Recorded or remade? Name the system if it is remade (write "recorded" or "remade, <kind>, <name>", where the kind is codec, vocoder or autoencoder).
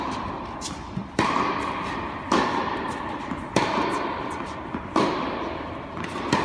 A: remade, vocoder, BigVGAN v2